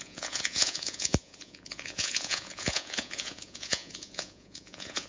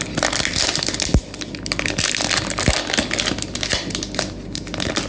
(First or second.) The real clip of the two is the second